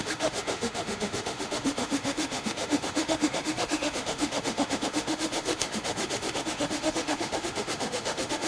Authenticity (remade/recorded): remade